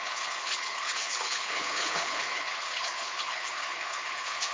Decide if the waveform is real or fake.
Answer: fake